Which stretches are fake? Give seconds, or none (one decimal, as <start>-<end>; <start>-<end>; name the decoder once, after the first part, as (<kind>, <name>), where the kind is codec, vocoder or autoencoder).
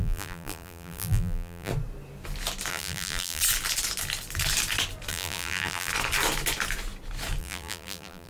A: 0.0-1.7 (vocoder, BigVGAN v2); 2.7-3.4; 5.1-5.9; 7.4-8.3